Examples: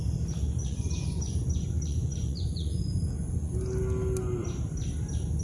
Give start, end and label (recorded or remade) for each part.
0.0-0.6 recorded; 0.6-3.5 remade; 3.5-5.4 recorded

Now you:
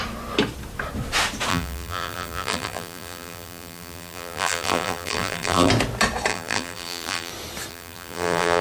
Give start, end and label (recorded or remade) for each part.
0.0-1.5 recorded; 1.5-5.7 remade; 5.7-6.3 recorded; 6.3-7.3 remade; 7.3-7.7 recorded; 7.7-8.6 remade